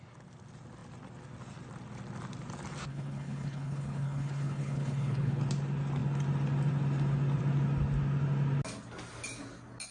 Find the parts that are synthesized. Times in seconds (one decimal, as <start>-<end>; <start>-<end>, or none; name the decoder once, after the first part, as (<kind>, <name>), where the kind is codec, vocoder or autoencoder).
2.9-5.4 (codec, HILCodec)